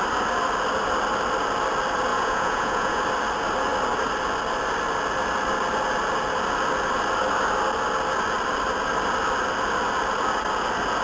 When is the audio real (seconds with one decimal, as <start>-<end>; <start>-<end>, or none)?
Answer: 0.0-2.1; 3.0-11.0